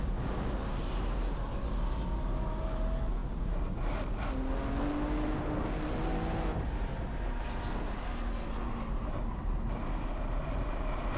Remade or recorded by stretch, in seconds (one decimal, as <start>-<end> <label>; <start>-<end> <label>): 0.0-11.2 recorded